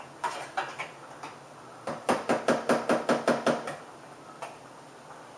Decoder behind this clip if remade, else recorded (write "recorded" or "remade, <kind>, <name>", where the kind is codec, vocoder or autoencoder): recorded